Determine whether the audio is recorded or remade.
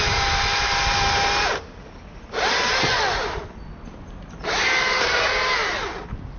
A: recorded